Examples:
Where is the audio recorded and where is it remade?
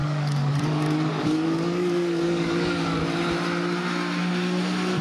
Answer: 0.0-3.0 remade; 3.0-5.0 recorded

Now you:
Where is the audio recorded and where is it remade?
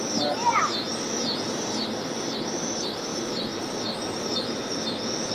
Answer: 0.0-0.9 recorded; 0.9-2.7 remade; 2.7-3.1 recorded; 3.1-5.3 remade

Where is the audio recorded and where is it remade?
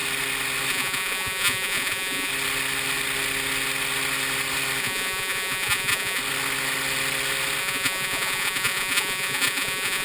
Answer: 0.0-0.7 recorded; 0.7-2.3 remade; 2.3-4.8 recorded; 4.8-6.2 remade; 6.2-7.6 recorded; 7.6-10.0 remade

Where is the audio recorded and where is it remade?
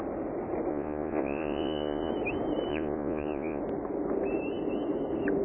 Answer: 0.0-0.7 recorded; 0.7-2.1 remade; 2.1-2.7 recorded; 2.7-3.6 remade; 3.6-5.4 recorded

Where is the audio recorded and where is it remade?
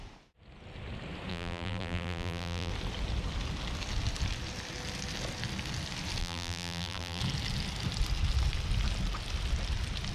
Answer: 0.0-1.3 recorded; 1.3-2.7 remade; 2.7-6.2 recorded; 6.2-7.2 remade; 7.2-10.1 recorded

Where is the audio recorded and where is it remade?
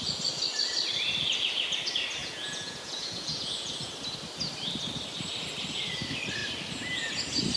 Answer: 0.0-2.2 recorded; 2.2-3.9 remade; 3.9-7.6 recorded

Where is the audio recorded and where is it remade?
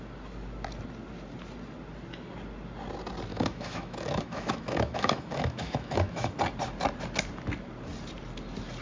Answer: 0.0-3.3 recorded; 3.3-6.3 remade; 6.3-8.8 recorded